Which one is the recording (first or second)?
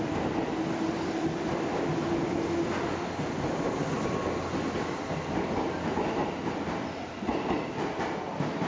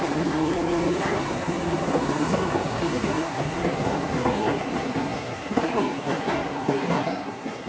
first